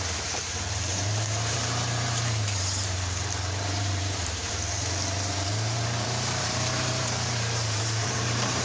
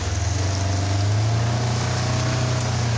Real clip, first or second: second